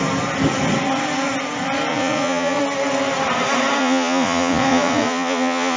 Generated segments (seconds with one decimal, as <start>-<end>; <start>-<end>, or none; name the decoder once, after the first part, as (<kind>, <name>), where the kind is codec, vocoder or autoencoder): 1.9-2.6 (vocoder, Vocos); 3.8-5.8